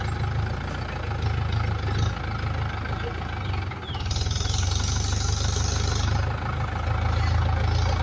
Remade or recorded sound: recorded